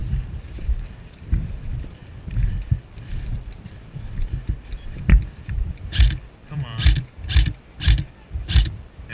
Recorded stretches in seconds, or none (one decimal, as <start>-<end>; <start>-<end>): 2.0-2.8